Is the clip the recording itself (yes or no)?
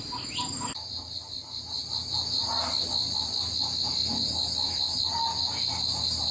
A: yes